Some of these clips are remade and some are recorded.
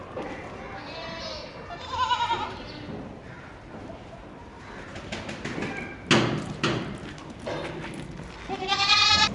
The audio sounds recorded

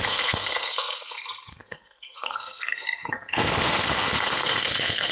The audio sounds remade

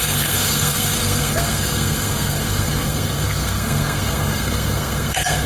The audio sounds remade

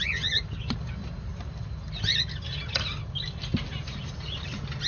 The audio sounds recorded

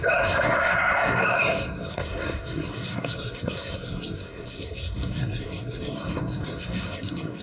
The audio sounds remade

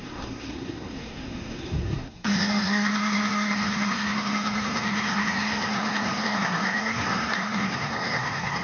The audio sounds remade